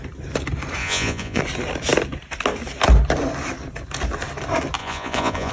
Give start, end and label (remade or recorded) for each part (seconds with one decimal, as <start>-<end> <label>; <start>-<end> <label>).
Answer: 0.0-0.8 recorded; 0.8-1.4 remade; 1.4-4.8 recorded; 4.8-5.5 remade